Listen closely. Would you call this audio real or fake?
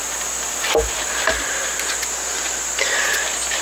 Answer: real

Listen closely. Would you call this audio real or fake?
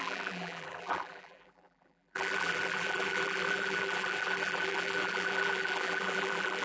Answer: fake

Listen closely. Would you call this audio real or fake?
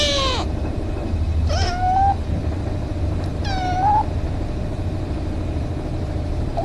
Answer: real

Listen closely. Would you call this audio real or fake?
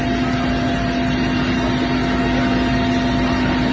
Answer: real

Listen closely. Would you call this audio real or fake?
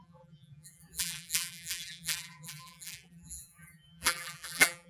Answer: fake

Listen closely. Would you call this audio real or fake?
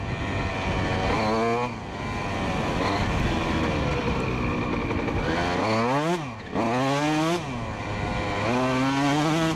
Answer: real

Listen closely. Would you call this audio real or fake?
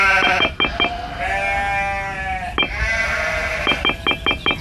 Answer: real